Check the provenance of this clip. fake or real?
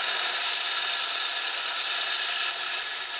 real